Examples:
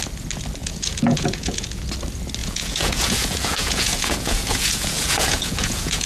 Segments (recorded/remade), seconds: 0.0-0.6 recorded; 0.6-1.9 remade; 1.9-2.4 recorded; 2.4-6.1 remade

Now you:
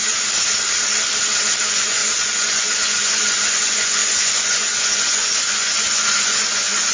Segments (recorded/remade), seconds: 0.0-1.6 recorded; 1.6-6.9 remade

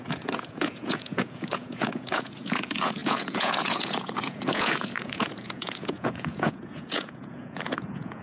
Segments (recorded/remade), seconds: 0.0-8.2 remade

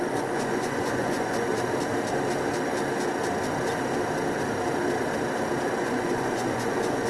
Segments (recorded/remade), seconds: 0.0-1.5 remade; 1.5-5.8 recorded; 5.8-7.1 remade

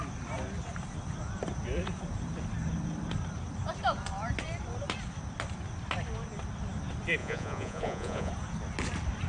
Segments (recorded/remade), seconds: 0.0-7.2 recorded; 7.2-8.3 remade; 8.3-9.3 recorded

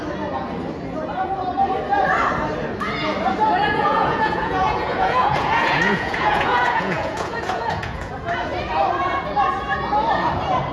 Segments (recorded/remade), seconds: 0.0-3.6 recorded; 3.6-8.1 remade; 8.1-10.7 recorded